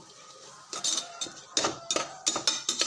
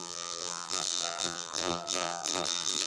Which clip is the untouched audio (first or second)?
first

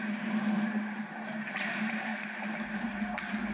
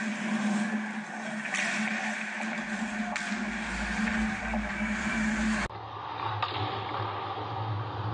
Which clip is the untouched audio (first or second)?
second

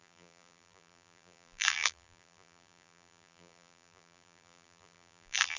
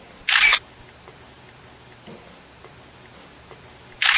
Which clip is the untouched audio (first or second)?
second